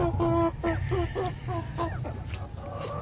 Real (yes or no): yes